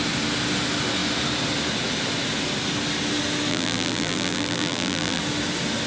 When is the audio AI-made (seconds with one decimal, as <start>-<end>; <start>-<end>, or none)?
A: 3.5-5.2